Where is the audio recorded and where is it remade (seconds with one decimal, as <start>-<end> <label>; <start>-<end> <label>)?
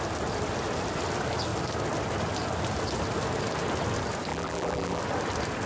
0.0-4.3 recorded; 4.3-5.0 remade; 5.0-5.7 recorded